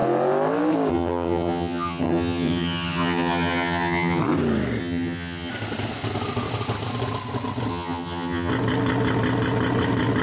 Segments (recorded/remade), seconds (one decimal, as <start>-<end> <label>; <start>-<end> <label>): 0.0-0.9 recorded; 0.9-4.2 remade; 4.2-4.8 recorded; 4.8-5.5 remade; 5.5-7.7 recorded; 7.7-8.5 remade; 8.5-10.2 recorded